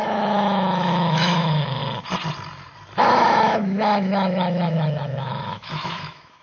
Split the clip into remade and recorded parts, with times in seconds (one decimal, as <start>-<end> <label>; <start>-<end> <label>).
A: 0.0-1.8 remade; 1.8-3.0 recorded; 3.0-6.4 remade